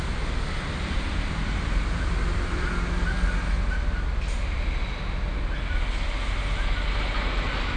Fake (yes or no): no